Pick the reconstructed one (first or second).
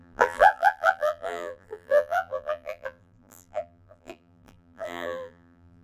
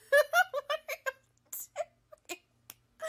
first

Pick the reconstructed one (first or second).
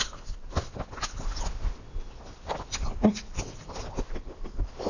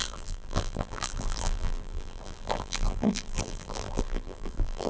second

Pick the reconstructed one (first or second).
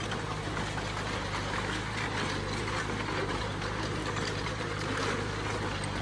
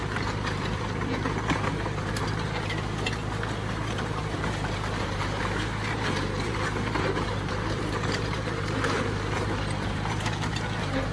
second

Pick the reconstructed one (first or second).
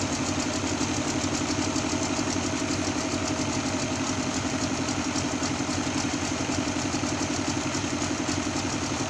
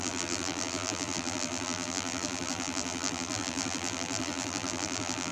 second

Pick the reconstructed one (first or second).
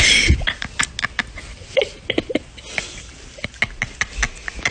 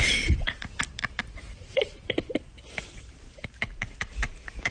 second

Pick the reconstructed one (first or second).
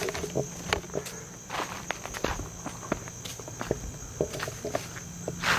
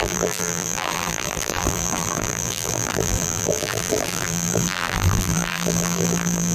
second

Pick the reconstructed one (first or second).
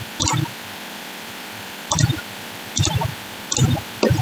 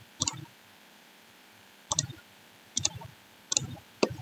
second